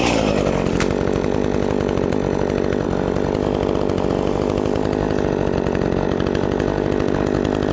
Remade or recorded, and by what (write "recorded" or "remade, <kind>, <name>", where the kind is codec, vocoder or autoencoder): recorded